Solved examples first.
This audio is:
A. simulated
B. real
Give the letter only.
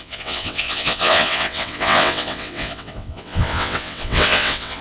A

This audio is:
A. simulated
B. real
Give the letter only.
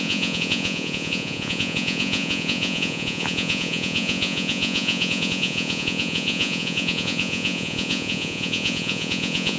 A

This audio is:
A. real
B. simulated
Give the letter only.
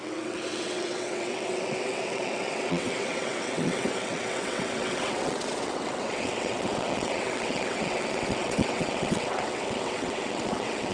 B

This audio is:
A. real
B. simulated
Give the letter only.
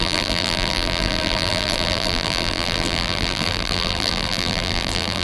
B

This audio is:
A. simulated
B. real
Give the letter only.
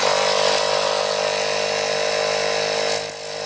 B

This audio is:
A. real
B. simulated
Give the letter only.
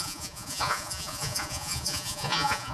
B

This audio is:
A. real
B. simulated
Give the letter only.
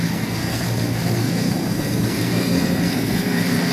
B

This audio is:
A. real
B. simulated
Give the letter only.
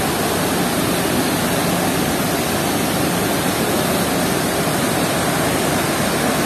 A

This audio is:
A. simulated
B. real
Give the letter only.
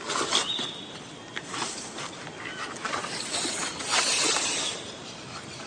B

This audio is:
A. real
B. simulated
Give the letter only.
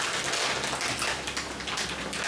A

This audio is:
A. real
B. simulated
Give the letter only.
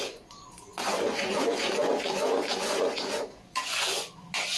B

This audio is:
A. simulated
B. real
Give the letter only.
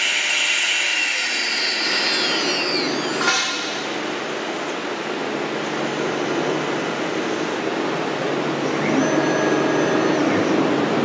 B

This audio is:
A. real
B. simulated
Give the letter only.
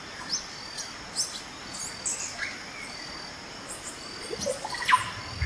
A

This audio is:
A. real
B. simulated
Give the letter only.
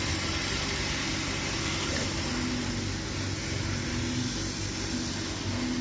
A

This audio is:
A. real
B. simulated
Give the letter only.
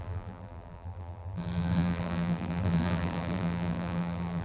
B